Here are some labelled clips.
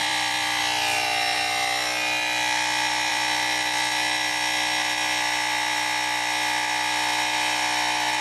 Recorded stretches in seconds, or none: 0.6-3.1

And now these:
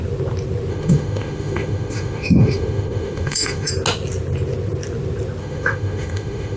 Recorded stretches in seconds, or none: 0.0-0.7; 3.7-5.4

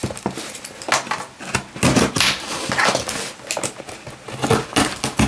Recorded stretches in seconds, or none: 0.6-5.3

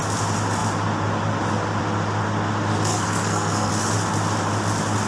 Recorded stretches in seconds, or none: 0.0-2.9; 3.7-5.1

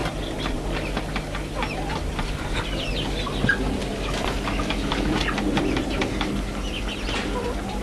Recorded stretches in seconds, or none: 1.1-3.8; 6.8-7.8